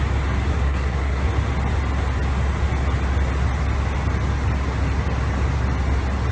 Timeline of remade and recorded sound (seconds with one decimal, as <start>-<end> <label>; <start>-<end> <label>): 0.0-0.5 recorded; 0.5-1.2 remade; 1.2-6.3 recorded